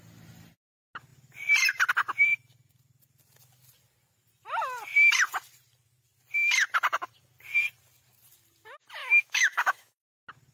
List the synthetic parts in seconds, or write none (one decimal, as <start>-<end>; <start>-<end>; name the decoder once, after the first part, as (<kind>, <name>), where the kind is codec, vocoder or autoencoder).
9.0-10.1 (autoencoder, DAC-VAE)